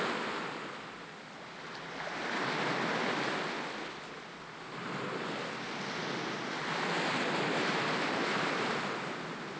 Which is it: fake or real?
real